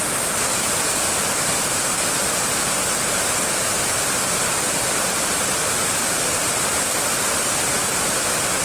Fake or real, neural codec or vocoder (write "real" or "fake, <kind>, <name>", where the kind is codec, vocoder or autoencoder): real